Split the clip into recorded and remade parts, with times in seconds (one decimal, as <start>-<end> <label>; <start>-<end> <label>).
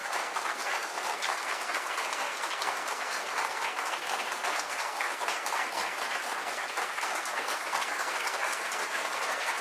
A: 0.0-9.6 remade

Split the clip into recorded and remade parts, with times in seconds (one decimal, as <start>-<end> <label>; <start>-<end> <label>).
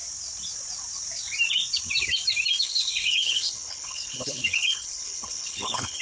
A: 0.0-2.6 recorded; 2.6-6.0 remade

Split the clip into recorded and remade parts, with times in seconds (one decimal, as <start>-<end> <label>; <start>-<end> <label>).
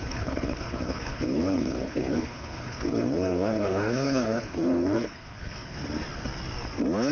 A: 0.0-5.8 remade; 5.8-7.1 recorded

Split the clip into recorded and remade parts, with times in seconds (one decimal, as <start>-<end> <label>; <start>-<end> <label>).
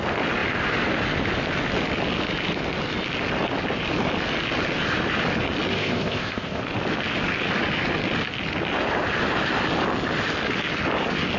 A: 0.0-5.7 recorded; 5.7-6.6 remade; 6.6-11.4 recorded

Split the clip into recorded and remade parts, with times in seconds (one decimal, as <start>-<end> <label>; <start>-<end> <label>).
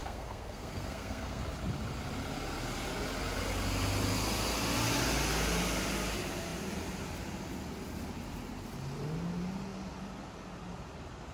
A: 0.0-1.4 remade; 1.4-11.3 recorded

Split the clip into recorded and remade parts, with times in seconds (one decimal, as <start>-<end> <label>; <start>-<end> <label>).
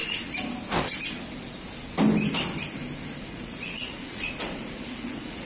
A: 0.0-3.3 recorded; 3.3-5.5 remade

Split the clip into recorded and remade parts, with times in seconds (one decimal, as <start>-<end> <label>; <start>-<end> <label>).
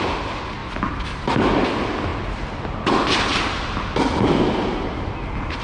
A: 0.0-5.6 recorded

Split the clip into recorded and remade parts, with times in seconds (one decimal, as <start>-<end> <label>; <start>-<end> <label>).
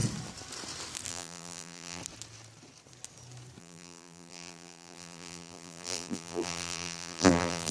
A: 0.0-1.1 recorded; 1.1-2.0 remade; 2.0-3.6 recorded; 3.6-7.7 remade